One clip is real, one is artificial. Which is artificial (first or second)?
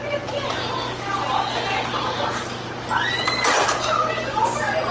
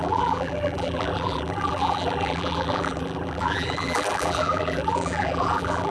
second